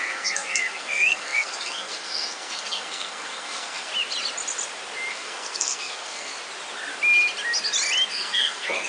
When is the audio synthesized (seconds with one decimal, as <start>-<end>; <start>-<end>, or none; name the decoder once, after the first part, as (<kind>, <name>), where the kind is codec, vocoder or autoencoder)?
0.0-3.9 (codec, SNAC); 5.1-6.3; 8.1-8.9